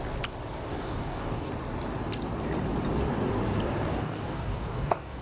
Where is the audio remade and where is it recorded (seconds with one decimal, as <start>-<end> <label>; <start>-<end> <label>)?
0.0-0.7 recorded; 0.7-1.5 remade; 1.5-3.9 recorded; 3.9-5.2 remade